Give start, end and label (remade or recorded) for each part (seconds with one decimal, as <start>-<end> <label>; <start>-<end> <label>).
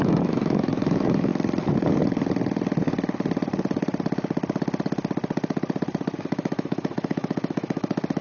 0.0-1.3 remade; 1.3-6.2 recorded; 6.2-8.2 remade